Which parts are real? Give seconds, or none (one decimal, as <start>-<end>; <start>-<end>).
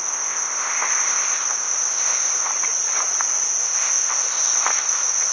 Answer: 2.5-3.6